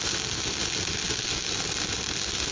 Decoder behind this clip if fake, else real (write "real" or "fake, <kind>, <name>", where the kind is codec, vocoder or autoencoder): real